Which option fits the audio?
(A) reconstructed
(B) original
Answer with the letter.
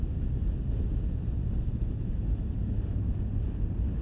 B